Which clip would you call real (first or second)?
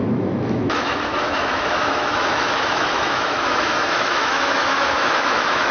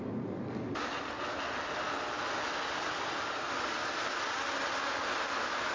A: second